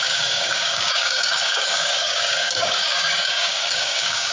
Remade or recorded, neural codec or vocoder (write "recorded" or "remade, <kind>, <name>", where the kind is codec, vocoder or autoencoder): remade, codec, DAC